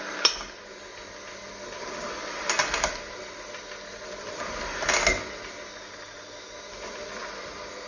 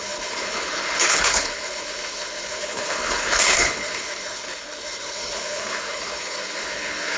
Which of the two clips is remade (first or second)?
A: second